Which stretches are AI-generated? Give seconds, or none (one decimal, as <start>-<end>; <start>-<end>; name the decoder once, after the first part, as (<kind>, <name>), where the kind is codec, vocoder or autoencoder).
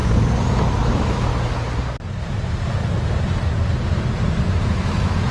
0.8-1.3 (autoencoder, DAC-VAE); 4.5-5.3